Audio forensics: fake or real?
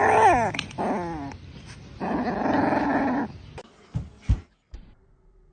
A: real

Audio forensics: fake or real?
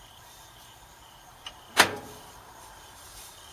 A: fake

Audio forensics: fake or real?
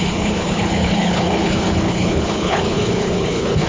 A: fake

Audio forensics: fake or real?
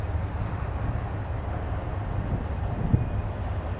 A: real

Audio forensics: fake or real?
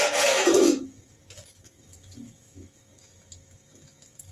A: fake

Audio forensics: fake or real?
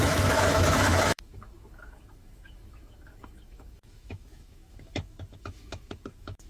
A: fake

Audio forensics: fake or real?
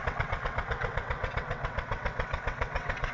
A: fake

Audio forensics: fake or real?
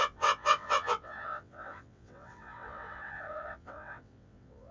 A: fake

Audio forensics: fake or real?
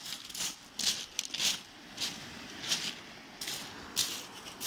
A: real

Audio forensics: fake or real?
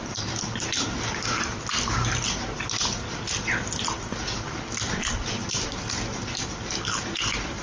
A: real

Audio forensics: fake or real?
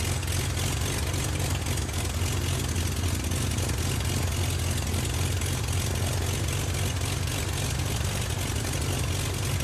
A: real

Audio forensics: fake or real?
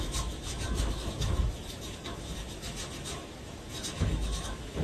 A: fake